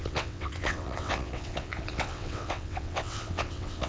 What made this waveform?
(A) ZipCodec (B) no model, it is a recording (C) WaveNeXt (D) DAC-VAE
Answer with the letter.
C